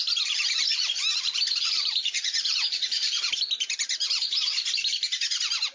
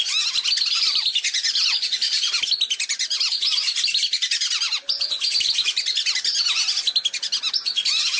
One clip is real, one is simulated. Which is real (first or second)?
second